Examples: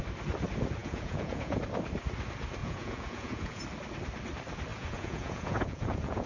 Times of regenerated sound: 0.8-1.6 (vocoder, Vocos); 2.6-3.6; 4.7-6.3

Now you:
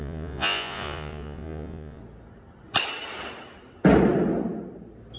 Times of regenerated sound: 0.0-2.0 (vocoder, Vocos)

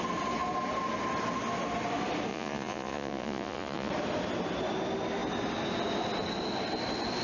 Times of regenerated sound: 2.3-3.9 (vocoder, Vocos)